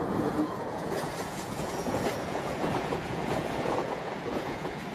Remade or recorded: remade